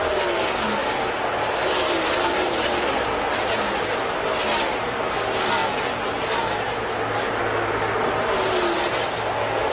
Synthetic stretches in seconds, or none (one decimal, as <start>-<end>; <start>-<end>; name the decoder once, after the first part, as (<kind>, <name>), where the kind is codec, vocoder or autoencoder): 0.8-3.5 (vocoder, BigVGAN v2)